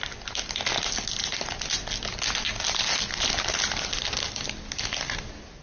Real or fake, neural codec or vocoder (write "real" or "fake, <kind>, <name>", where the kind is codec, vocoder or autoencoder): real